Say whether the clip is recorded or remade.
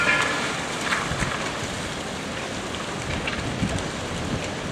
recorded